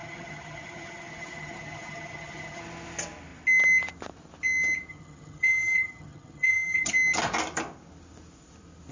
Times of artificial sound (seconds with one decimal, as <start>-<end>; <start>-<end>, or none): 0.0-2.6; 4.9-6.9